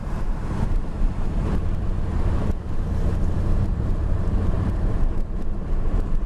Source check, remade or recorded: remade